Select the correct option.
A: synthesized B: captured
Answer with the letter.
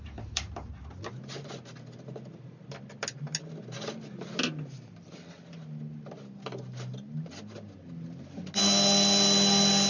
B